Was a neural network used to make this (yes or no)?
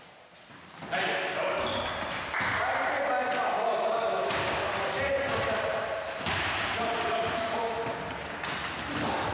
no